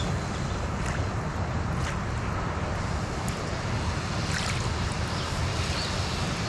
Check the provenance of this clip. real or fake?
real